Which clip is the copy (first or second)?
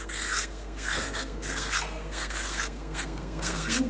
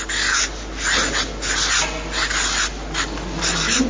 first